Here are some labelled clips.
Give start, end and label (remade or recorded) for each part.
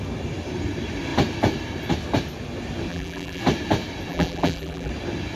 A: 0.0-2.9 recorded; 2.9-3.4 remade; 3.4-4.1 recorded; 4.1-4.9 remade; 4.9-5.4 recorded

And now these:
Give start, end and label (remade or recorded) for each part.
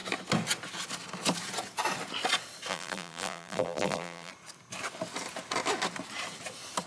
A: 0.0-2.7 recorded; 2.7-4.3 remade; 4.3-6.9 recorded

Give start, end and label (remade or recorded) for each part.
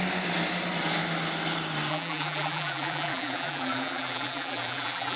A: 0.0-1.9 recorded; 1.9-5.2 remade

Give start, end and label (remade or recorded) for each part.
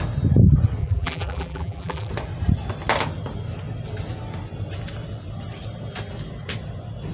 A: 0.0-0.8 recorded; 0.8-2.1 remade; 2.1-7.1 recorded